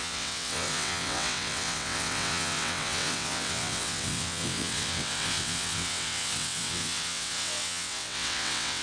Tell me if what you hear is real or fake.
fake